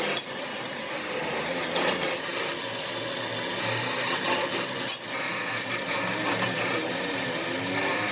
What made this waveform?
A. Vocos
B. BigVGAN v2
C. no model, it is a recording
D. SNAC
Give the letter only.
C